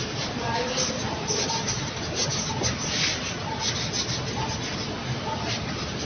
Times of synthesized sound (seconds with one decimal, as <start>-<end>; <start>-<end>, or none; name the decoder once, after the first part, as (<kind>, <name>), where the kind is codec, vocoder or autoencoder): none